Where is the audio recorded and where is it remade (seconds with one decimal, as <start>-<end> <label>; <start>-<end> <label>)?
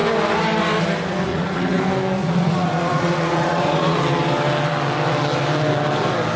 0.0-1.3 recorded; 1.3-1.8 remade; 1.8-2.2 recorded; 2.2-4.0 remade; 4.0-6.4 recorded